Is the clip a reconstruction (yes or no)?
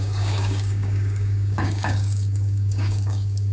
yes